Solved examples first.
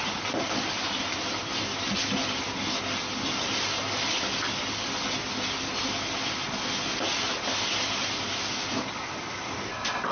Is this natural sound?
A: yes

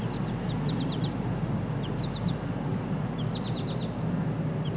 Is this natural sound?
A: yes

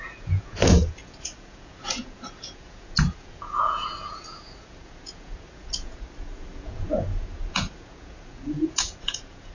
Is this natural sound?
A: no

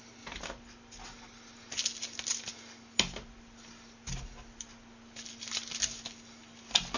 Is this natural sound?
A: yes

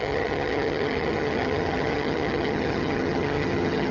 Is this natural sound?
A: no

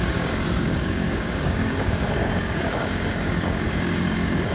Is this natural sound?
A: no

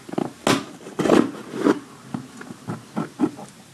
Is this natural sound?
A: yes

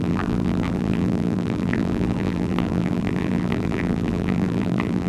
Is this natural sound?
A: no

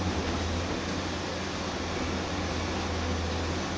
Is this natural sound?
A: yes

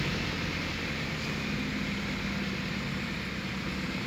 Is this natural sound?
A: yes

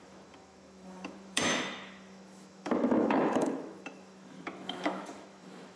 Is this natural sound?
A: no